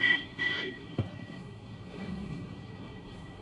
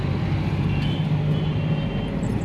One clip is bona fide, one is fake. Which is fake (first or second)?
first